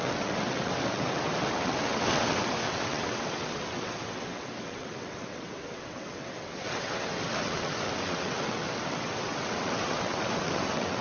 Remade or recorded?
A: remade